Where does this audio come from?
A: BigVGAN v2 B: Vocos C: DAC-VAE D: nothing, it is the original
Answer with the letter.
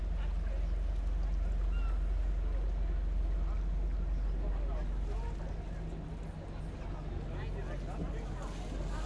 D